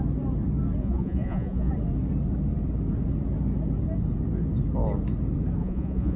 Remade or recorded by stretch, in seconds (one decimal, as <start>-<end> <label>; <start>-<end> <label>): 0.0-0.8 recorded; 0.8-1.7 remade; 1.7-5.6 recorded; 5.6-6.2 remade

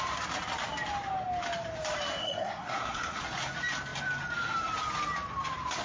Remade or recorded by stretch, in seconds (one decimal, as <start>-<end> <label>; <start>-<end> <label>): 0.0-2.2 recorded; 2.2-3.2 remade; 3.2-5.8 recorded

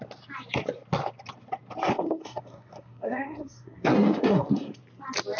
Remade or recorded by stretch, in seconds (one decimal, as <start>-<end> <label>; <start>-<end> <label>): 0.0-1.9 recorded; 1.9-4.8 remade; 4.8-5.4 recorded